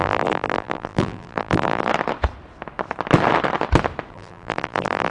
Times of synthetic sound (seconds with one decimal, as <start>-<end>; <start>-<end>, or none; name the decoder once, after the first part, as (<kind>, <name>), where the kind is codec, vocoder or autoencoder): 0.0-1.9 (vocoder, BigVGAN v2); 4.1-5.1

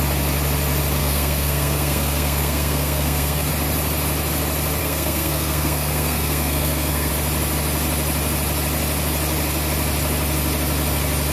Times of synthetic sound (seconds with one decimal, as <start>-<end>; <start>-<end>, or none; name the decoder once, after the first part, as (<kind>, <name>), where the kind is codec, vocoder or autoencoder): 1.0-3.5 (codec, SNAC); 4.8-7.1

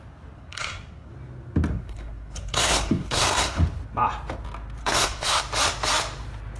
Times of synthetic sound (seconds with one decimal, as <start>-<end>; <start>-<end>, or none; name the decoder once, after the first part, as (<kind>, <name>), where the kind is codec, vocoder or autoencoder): 0.4-1.1 (codec, SNAC); 1.7-3.6; 4.8-5.4

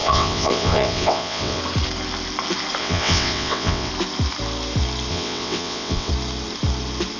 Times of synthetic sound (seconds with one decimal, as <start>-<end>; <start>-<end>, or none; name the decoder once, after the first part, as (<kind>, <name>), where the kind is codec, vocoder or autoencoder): 0.0-1.6 (vocoder, WaveNeXt); 2.8-3.9; 5.1-6.1

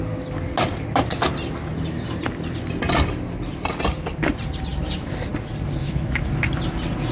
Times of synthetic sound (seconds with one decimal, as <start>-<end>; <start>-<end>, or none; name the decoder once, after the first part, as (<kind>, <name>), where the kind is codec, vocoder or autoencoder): 5.8-6.3 (autoencoder, DAC-VAE)

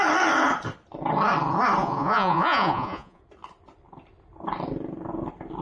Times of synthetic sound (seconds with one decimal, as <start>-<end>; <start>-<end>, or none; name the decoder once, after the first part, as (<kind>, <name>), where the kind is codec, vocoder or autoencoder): 1.8-3.2 (vocoder, Vocos)

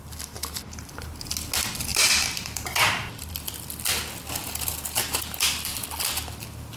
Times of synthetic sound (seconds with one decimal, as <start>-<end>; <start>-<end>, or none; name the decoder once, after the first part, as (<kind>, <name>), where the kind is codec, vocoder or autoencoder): 0.4-1.1 (vocoder, BigVGAN v2); 1.9-3.3